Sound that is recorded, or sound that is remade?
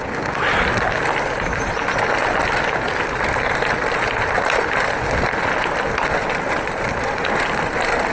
recorded